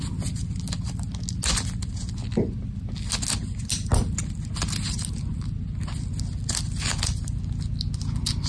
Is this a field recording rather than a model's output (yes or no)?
yes